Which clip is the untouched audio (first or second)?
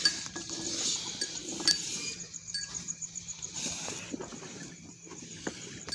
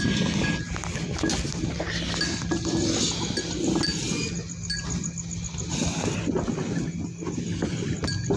second